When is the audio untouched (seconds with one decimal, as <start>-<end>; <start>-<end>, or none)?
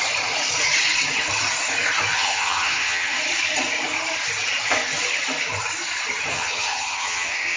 0.0-2.1; 3.2-6.3